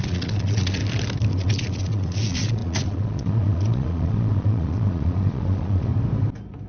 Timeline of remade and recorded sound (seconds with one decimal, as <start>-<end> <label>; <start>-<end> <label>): 0.0-0.8 remade; 0.8-1.3 recorded; 1.3-5.9 remade; 5.9-6.7 recorded